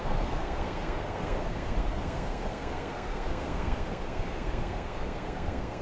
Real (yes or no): no